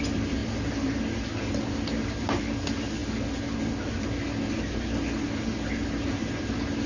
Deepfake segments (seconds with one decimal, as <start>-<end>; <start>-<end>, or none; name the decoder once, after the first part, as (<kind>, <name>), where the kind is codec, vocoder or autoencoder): none